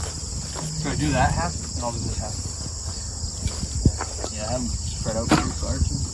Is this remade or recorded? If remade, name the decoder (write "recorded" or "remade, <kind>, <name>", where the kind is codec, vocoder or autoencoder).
recorded